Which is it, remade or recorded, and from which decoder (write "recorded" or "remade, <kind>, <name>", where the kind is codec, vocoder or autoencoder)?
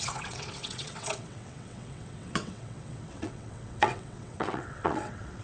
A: remade, vocoder, WaveNeXt